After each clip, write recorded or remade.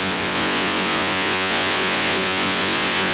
remade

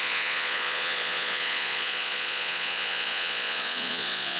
remade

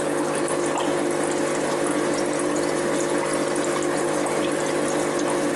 recorded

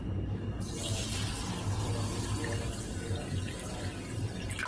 recorded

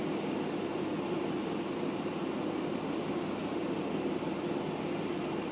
recorded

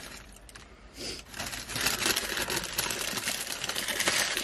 recorded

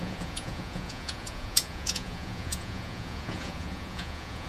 remade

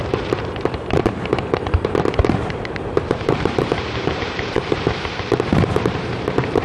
remade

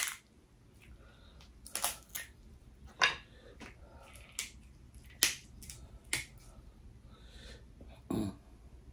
recorded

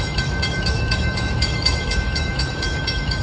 remade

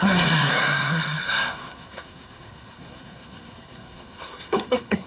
remade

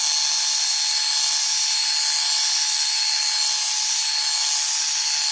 recorded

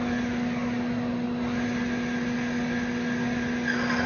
recorded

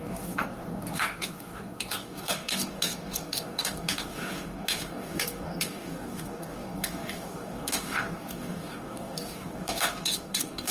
remade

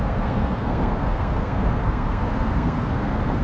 remade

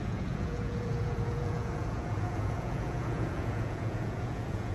remade